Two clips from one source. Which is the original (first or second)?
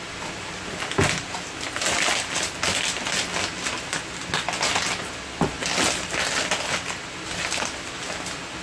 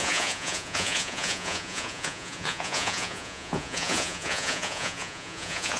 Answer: first